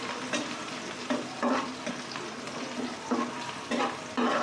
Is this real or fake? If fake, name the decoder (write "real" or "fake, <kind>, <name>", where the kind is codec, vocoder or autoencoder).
fake, vocoder, BigVGAN v2